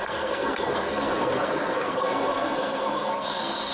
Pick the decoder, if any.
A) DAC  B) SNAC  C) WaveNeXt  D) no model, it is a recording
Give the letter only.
B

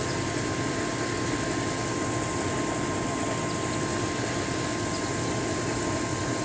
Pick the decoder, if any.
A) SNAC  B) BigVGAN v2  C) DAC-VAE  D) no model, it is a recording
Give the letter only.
D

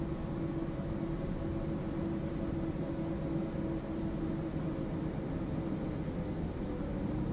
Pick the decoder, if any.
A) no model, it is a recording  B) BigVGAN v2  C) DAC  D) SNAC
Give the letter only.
A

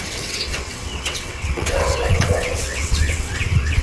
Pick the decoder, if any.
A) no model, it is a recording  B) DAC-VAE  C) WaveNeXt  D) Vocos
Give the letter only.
C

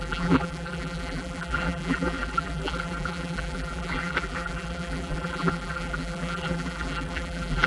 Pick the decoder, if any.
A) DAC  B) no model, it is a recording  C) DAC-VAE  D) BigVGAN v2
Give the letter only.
D